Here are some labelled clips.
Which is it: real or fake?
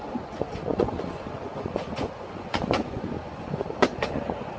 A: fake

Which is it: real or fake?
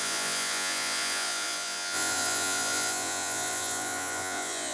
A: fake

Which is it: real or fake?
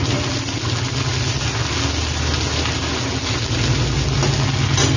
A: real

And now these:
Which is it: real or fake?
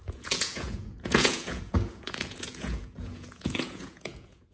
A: fake